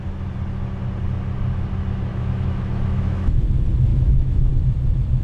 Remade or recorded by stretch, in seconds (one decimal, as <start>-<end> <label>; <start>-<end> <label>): 0.0-2.1 recorded; 2.1-3.4 remade; 3.4-3.9 recorded; 3.9-4.5 remade; 4.5-5.2 recorded